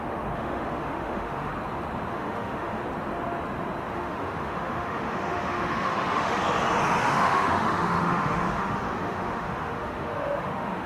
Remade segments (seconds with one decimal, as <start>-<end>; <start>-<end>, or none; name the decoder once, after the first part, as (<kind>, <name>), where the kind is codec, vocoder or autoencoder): 0.0-1.5 (autoencoder, DAC-VAE); 2.1-2.8; 3.9-6.4; 7.0-10.9

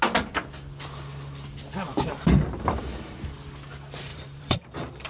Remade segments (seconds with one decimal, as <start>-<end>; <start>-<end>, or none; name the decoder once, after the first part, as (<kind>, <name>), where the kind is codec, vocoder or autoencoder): 1.9-2.8 (vocoder, BigVGAN v2); 4.1-5.1

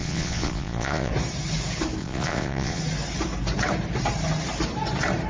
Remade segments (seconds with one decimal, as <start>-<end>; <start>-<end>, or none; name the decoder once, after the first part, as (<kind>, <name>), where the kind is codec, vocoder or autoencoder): 0.0-1.1 (vocoder, Vocos); 2.0-2.8

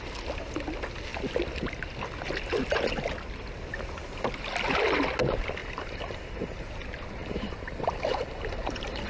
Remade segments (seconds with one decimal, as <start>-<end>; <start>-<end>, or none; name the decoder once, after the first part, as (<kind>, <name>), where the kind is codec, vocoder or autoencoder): 5.6-6.6 (vocoder, BigVGAN v2); 7.2-9.1

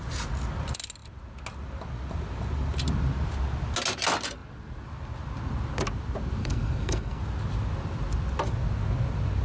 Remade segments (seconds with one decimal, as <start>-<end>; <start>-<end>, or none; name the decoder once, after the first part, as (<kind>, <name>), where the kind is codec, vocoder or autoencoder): 6.4-7.2 (codec, SNAC)

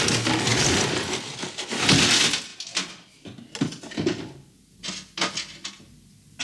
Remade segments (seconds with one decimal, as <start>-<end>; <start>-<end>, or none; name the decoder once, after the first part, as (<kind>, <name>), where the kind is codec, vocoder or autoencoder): 0.5-1.5 (vocoder, BigVGAN v2)